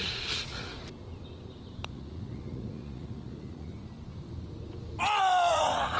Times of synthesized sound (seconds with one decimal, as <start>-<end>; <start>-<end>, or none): 0.0-0.7; 1.9-3.7; 5.5-6.0